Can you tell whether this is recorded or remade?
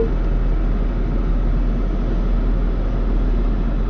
recorded